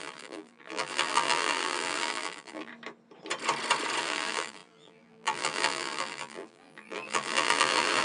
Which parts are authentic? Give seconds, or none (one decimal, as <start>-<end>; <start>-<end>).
2.7-4.0

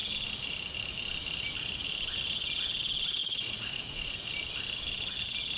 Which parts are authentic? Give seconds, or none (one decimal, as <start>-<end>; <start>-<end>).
0.0-3.2; 4.3-5.6

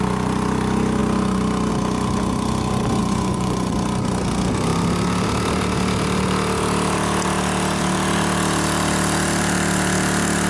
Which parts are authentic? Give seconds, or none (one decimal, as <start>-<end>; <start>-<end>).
0.0-3.0; 3.7-10.5

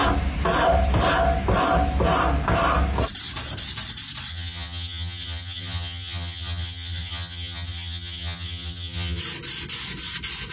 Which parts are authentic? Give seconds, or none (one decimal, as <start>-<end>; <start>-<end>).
0.0-4.3; 9.2-10.5